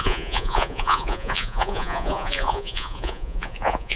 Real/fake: fake